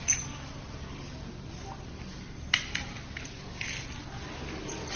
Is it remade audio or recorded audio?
recorded